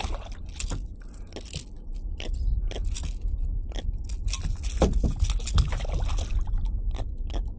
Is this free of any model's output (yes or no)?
yes